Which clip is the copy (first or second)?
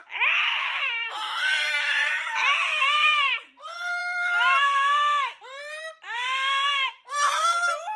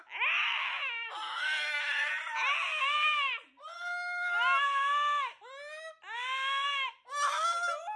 first